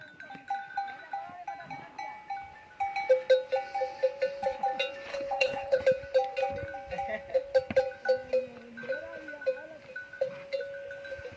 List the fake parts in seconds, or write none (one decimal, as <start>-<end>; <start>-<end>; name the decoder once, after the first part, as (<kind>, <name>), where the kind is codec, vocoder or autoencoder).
5.1-5.8 (codec, HILCodec)